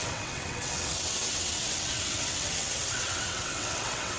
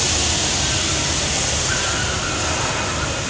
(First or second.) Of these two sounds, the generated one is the first